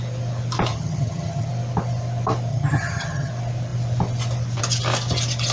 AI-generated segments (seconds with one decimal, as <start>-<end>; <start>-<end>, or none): 0.7-1.5; 2.5-3.3